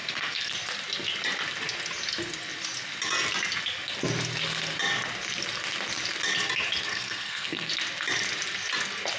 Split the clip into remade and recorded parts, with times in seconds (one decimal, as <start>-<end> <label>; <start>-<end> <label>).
0.0-0.5 remade; 0.5-6.9 recorded; 6.9-7.7 remade; 7.7-9.2 recorded